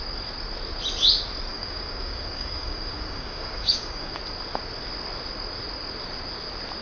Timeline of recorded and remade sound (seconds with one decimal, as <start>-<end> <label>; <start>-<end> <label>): 0.0-1.5 recorded; 1.5-4.2 remade; 4.2-6.8 recorded